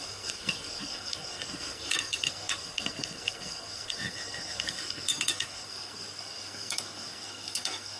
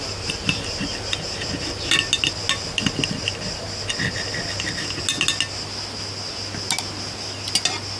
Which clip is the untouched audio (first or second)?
second